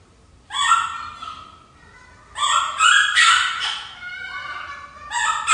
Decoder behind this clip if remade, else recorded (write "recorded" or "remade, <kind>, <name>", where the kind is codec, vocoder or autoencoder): recorded